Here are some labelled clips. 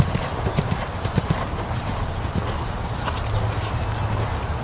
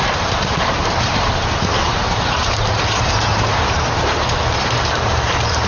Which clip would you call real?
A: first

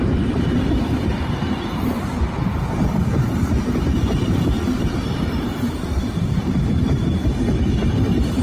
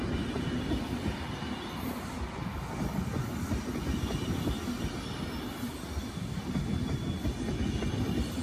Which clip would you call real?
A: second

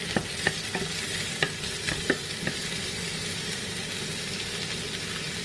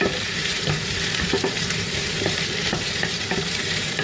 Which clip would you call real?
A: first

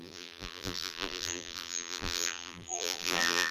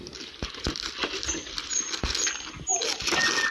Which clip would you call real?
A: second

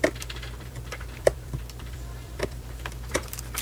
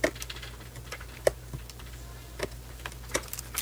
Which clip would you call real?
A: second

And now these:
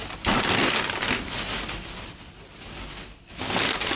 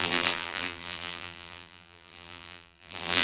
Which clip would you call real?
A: first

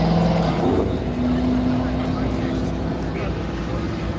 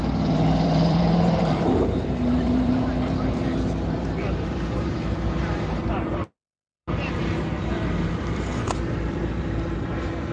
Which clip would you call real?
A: first